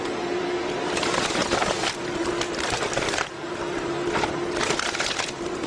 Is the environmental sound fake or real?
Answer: fake